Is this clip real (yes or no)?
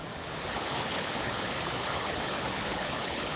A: no